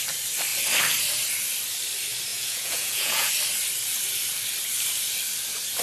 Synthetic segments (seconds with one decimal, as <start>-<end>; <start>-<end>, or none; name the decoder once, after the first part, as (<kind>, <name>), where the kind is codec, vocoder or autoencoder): 2.3-3.3 (vocoder, Vocos)